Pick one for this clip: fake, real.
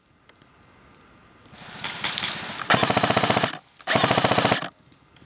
real